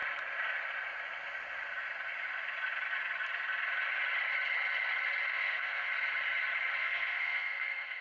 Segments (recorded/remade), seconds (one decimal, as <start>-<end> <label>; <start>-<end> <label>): 0.0-5.3 recorded; 5.3-5.9 remade; 5.9-6.8 recorded; 6.8-8.0 remade